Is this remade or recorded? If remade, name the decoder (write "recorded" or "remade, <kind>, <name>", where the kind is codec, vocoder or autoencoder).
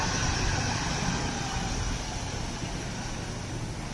recorded